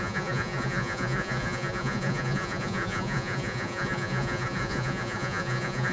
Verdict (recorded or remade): remade